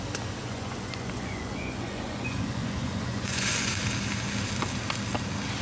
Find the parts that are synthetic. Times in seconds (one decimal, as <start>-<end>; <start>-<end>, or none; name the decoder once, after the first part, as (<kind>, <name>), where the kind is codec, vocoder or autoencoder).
0.4-3.8 (vocoder, Vocos)